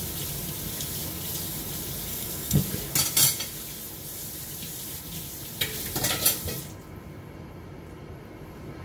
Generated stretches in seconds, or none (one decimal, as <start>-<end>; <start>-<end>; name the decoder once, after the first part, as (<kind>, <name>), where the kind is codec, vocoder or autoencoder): 2.1-2.6 (codec, SNAC)